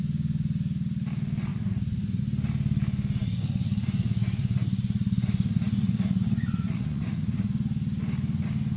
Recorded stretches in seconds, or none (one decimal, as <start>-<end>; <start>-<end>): 0.0-1.5; 2.2-3.2; 7.5-8.8